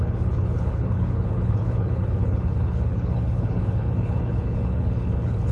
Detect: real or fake fake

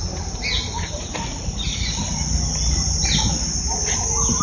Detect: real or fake real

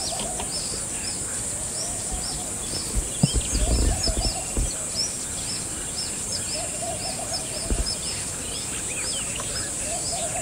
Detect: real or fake real